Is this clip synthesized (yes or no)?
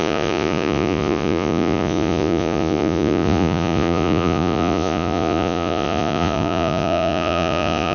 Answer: yes